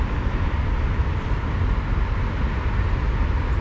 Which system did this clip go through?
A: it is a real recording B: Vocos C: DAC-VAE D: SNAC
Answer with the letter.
A